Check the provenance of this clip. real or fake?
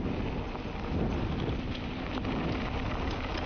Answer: real